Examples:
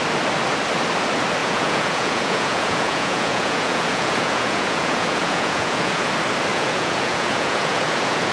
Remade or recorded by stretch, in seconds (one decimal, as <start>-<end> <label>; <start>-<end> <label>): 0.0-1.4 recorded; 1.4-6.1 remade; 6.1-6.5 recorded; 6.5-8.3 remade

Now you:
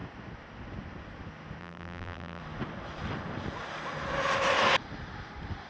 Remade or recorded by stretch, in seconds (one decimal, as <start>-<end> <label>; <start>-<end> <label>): 0.0-1.6 recorded; 1.6-2.4 remade; 2.4-5.7 recorded

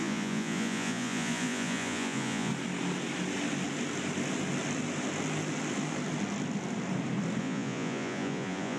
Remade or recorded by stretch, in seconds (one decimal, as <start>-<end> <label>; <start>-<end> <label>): 0.0-2.5 remade; 2.5-7.4 recorded; 7.4-8.8 remade

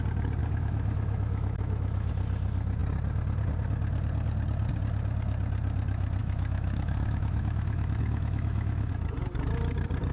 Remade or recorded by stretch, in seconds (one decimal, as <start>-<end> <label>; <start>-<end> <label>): 0.0-0.4 recorded; 0.4-2.1 remade; 2.1-6.2 recorded; 6.2-8.9 remade; 8.9-10.1 recorded

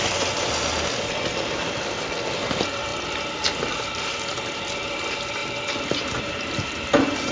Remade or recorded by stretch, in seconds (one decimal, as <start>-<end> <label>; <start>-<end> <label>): 0.0-7.3 recorded

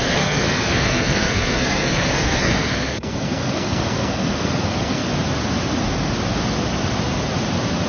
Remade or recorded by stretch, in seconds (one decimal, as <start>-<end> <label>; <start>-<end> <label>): 0.0-5.0 remade; 5.0-7.9 recorded

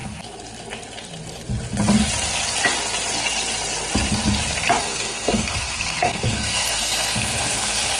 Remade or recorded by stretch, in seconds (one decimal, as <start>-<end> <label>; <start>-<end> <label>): 0.0-4.8 recorded; 4.8-8.0 remade

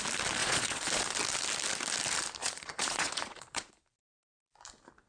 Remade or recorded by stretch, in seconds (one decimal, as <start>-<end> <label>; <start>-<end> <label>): 0.0-0.4 recorded; 0.4-0.9 remade; 0.9-2.4 recorded; 2.4-3.7 remade; 3.7-5.1 recorded